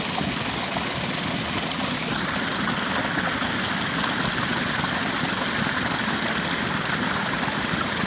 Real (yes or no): yes